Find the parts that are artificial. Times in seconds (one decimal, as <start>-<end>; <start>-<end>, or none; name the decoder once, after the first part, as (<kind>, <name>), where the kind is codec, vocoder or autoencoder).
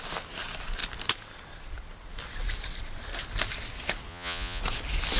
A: 4.1-4.6 (vocoder, Vocos)